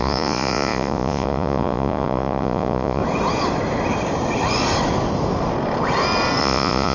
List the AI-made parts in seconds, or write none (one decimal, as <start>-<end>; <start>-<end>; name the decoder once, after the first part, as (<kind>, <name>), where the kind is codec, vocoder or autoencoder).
0.0-3.0 (vocoder, Vocos); 6.4-6.9